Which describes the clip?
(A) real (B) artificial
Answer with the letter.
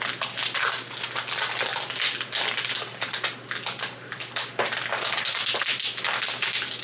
A